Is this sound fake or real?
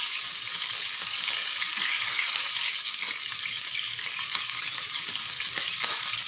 fake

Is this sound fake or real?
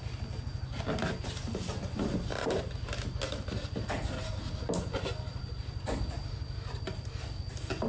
real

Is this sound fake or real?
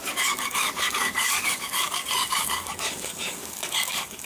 fake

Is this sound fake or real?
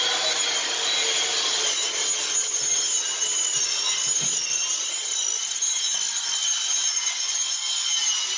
real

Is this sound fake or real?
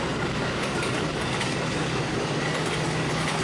fake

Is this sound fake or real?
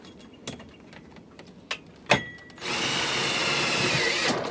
real